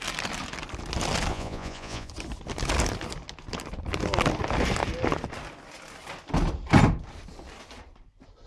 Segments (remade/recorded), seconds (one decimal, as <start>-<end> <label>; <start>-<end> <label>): 0.0-1.3 recorded; 1.3-2.1 remade; 2.1-8.5 recorded